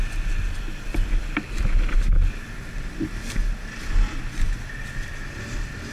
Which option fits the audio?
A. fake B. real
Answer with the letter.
B